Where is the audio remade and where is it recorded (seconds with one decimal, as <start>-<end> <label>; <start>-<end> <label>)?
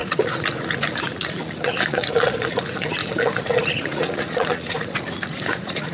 0.0-5.9 remade